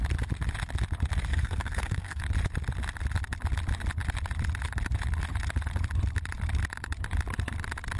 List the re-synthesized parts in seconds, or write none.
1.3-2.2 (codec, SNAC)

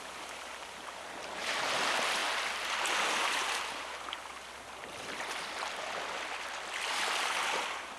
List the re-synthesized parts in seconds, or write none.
none

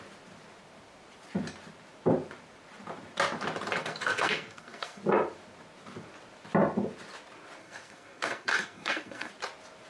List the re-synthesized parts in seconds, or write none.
3.8-5.0 (codec, SNAC); 7.6-9.3

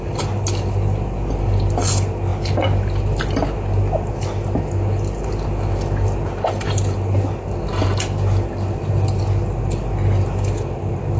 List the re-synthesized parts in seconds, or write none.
none

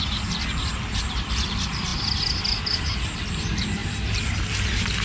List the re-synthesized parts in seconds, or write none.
none